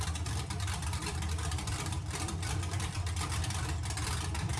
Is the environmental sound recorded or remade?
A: remade